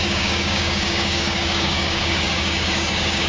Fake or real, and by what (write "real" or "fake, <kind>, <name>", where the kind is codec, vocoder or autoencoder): fake, codec, DAC